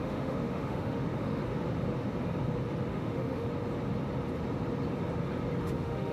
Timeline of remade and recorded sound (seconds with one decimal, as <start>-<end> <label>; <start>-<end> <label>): 0.0-1.4 remade; 1.4-2.9 recorded; 2.9-3.5 remade; 3.5-5.6 recorded; 5.6-6.1 remade